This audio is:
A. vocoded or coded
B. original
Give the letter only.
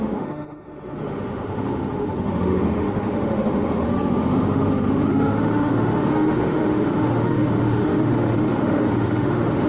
A